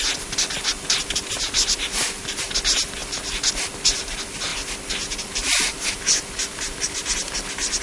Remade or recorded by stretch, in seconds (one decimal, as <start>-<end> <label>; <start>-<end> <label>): 0.0-7.8 recorded